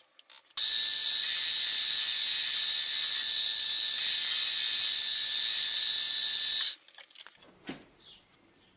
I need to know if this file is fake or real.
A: real